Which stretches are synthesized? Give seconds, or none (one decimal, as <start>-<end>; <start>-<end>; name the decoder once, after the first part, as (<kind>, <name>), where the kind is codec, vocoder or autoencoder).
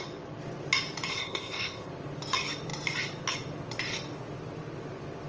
1.1-1.9 (codec, ZipCodec)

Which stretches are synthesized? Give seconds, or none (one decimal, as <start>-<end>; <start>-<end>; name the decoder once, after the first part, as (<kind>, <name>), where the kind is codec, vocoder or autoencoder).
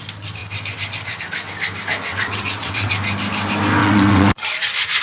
2.1-2.9 (vocoder, WaveNeXt); 3.8-4.4